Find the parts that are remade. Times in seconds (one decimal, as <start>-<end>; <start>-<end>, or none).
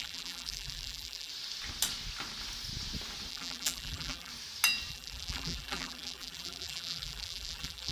0.0-1.3; 3.3-4.3; 4.9-7.9